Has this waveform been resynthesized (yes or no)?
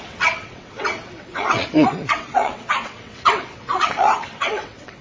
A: yes